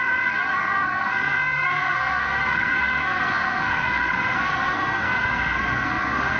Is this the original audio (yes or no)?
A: no